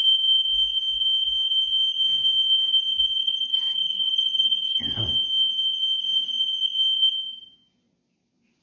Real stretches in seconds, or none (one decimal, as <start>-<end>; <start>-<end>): 0.0-3.2; 5.1-8.6